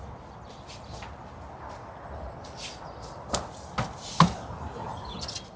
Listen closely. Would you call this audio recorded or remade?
recorded